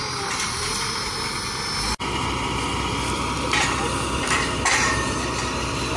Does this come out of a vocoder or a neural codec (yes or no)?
no